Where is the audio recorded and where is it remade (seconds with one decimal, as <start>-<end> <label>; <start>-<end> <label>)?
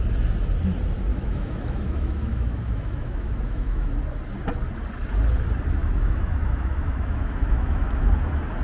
0.0-1.1 recorded; 1.1-3.9 remade; 3.9-5.8 recorded; 5.8-8.1 remade; 8.1-8.6 recorded